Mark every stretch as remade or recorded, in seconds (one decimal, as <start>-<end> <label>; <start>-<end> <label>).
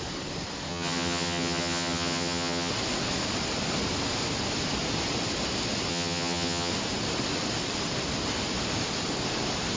0.0-0.7 recorded; 0.7-2.7 remade; 2.7-5.9 recorded; 5.9-6.7 remade; 6.7-9.8 recorded